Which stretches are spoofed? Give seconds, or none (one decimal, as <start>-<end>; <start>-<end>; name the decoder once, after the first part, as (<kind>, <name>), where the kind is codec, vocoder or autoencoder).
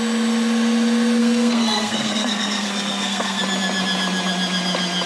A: 1.2-3.4 (codec, SNAC)